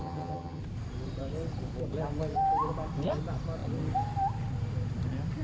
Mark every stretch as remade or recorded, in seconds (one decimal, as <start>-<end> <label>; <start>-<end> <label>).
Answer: 0.0-0.6 remade; 0.6-5.4 recorded